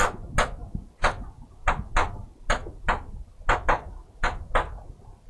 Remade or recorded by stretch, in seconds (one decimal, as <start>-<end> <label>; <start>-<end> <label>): 0.0-5.3 recorded